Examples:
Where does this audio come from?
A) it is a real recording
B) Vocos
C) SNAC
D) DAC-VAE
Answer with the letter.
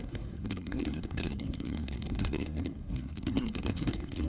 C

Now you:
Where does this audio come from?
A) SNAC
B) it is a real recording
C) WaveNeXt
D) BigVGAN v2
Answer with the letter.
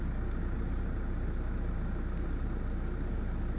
B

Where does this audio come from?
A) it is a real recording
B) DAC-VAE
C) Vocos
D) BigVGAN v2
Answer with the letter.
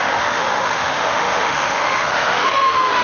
B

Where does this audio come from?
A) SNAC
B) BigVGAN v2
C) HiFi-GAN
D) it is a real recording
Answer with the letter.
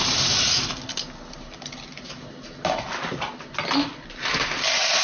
D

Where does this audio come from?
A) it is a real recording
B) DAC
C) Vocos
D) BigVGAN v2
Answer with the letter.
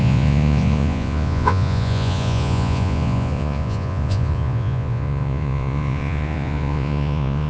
C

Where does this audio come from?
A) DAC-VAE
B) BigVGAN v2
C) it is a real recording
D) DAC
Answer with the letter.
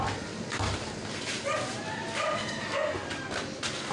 C